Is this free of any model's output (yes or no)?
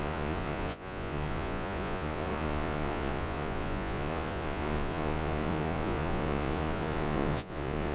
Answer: no